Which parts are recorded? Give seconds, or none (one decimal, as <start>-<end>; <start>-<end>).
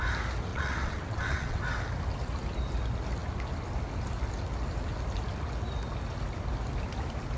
0.0-0.5; 1.6-7.4